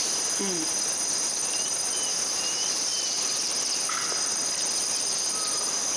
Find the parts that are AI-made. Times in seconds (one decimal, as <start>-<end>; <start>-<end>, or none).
0.0-2.9; 5.5-6.0